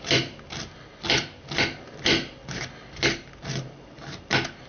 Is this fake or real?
real